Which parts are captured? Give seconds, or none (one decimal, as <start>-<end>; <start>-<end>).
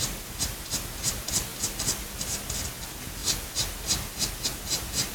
0.0-5.1